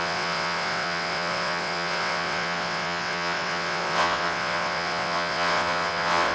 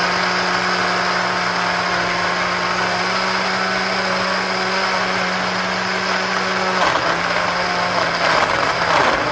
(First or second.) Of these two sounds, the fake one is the first